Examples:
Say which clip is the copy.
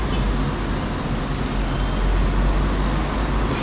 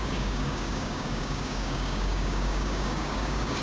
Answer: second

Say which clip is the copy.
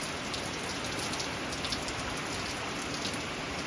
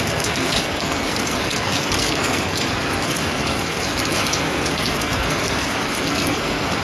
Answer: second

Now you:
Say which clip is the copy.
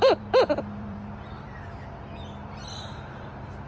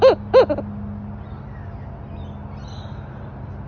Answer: first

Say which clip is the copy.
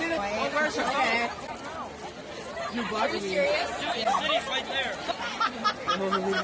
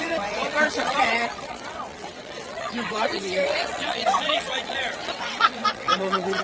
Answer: second